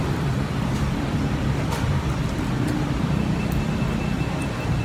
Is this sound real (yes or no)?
no